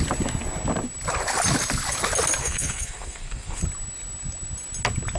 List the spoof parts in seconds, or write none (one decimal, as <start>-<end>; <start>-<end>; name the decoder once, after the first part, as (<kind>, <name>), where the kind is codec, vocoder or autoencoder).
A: 2.4-3.6 (codec, SNAC)